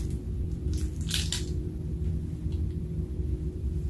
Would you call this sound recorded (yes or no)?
yes